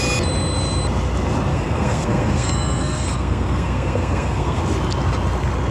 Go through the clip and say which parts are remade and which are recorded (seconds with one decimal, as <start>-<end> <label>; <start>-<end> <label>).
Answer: 0.0-1.5 recorded; 1.5-4.6 remade; 4.6-5.7 recorded